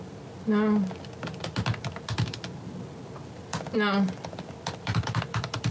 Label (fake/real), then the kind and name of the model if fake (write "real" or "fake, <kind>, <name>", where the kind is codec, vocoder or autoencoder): real